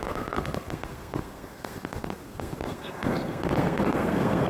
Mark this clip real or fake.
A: fake